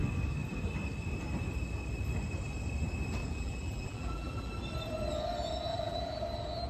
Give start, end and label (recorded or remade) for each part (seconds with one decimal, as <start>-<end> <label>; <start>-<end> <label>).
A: 0.0-3.2 recorded; 3.2-4.5 remade; 4.5-5.7 recorded; 5.7-6.2 remade; 6.2-6.7 recorded